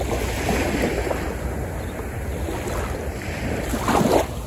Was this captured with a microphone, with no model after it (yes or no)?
yes